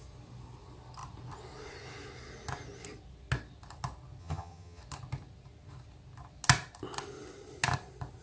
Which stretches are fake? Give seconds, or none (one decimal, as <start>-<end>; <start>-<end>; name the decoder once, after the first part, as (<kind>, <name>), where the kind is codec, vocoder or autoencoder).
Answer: 4.2-4.8 (vocoder, HiFi-GAN)